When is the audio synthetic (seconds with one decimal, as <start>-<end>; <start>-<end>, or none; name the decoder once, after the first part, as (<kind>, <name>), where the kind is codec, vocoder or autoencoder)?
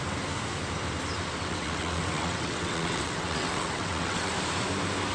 1.4-4.3 (vocoder, WaveNeXt)